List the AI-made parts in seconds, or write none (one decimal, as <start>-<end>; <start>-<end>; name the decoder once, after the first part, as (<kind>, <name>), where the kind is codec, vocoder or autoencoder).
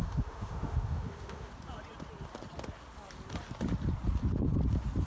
0.0-1.5 (autoencoder, DAC-VAE)